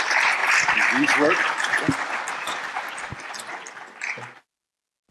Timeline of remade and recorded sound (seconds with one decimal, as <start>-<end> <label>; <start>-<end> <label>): 0.0-5.1 recorded